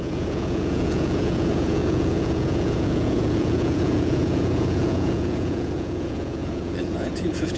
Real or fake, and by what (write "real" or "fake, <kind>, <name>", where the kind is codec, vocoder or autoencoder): fake, vocoder, Vocos